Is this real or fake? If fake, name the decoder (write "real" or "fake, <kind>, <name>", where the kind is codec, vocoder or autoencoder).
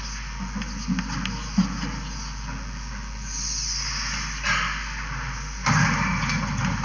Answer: real